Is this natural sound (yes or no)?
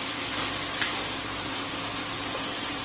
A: yes